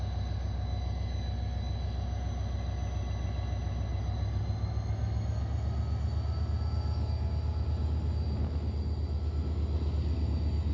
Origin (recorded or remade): recorded